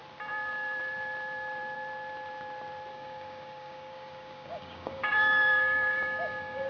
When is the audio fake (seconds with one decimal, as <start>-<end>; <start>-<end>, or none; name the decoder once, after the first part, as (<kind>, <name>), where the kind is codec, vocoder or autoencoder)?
2.9-6.7 (codec, DAC)